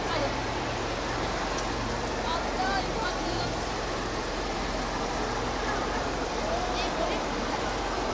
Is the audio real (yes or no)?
no